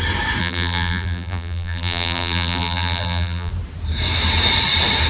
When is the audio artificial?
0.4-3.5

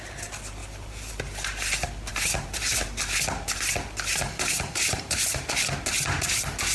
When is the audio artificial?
0.6-1.1; 2.1-2.7; 4.1-5.5

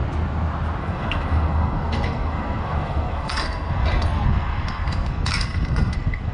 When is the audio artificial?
0.8-6.3

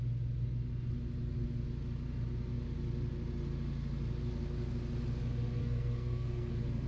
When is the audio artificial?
5.6-6.5

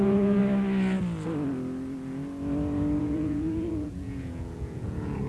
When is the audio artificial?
0.0-0.4; 3.0-5.3

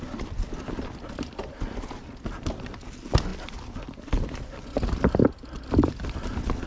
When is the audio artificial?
none